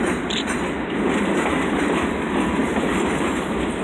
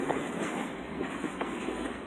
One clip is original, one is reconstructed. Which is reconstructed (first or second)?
second